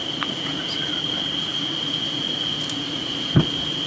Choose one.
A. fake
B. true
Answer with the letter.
A